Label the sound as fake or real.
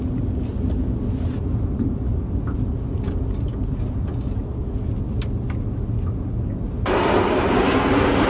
real